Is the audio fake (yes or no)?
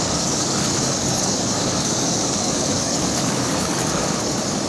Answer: yes